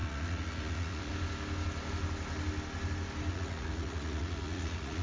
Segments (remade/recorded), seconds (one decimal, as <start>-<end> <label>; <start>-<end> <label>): 0.0-1.1 remade; 1.1-3.3 recorded; 3.3-5.0 remade